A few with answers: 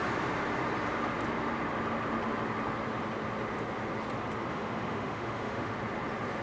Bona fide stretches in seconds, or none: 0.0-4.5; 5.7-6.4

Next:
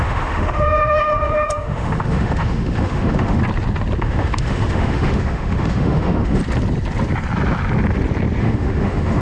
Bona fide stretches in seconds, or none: 3.4-4.0; 6.4-8.4

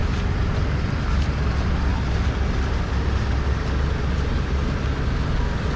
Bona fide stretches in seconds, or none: 0.0-5.8

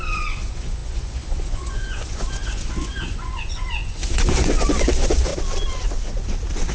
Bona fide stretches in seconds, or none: 5.3-6.7

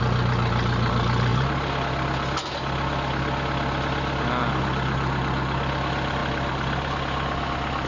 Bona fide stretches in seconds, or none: 0.0-7.9

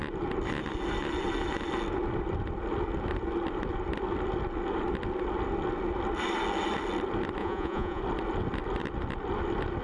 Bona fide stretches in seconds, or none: 0.0-7.4; 8.0-9.8

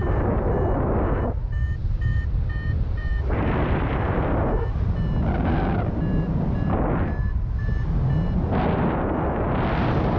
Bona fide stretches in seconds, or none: 0.0-1.8; 4.6-10.2

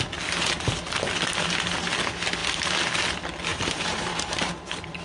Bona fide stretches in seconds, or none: 0.0-3.5; 4.5-5.0